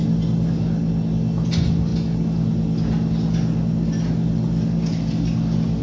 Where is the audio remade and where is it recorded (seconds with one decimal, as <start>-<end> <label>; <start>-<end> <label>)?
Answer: 0.0-5.8 recorded